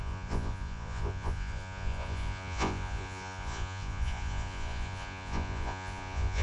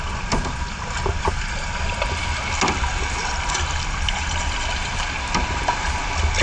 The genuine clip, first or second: second